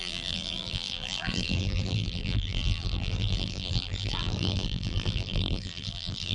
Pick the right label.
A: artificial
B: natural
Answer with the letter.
A